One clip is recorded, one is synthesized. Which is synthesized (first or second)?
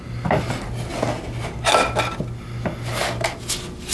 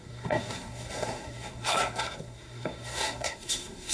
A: second